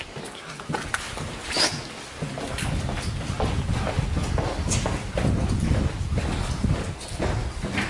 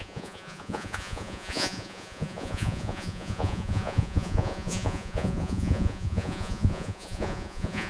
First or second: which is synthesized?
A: second